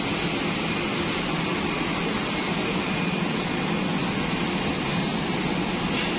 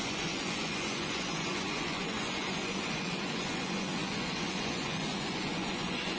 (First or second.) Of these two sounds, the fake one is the second